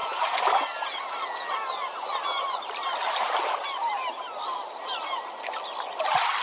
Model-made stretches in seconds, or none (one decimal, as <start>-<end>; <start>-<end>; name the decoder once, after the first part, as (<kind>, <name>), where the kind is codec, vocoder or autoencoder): 0.0-1.0 (vocoder, BigVGAN v2)